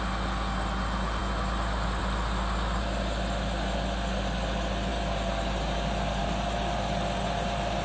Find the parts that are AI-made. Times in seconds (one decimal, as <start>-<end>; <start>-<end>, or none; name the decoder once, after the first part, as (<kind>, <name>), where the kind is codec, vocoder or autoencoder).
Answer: none